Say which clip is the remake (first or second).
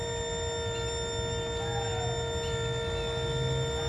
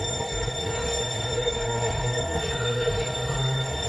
second